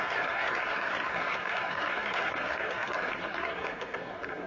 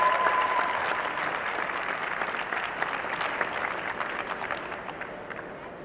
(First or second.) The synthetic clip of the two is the first